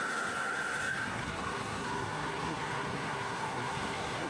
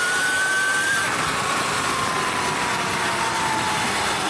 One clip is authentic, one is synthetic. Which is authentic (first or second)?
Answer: second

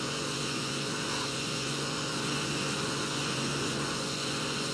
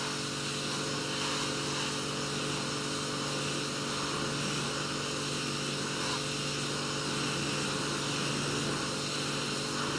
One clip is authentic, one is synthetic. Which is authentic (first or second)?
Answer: second